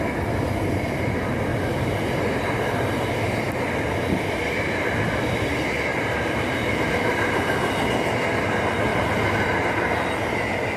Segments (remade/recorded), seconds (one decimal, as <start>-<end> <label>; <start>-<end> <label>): 0.0-1.5 recorded; 1.5-2.9 remade; 2.9-5.9 recorded; 5.9-6.9 remade; 6.9-8.9 recorded; 8.9-10.1 remade; 10.1-10.8 recorded

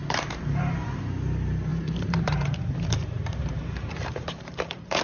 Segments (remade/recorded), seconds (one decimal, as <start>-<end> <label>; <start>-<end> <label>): 0.0-1.0 remade; 1.0-1.7 recorded; 1.7-5.0 remade

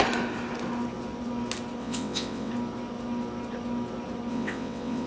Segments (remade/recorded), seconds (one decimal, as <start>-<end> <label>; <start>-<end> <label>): 0.0-1.8 recorded; 1.8-2.5 remade; 2.5-4.3 recorded; 4.3-5.1 remade

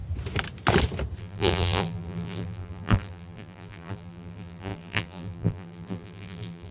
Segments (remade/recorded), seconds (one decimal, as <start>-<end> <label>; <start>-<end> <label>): 0.0-1.2 recorded; 1.2-6.7 remade